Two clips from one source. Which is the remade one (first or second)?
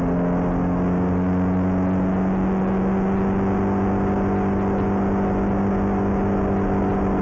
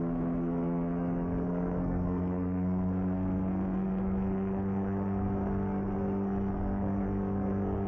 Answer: second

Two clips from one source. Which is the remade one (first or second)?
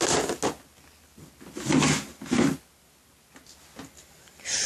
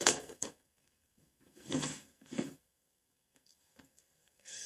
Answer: second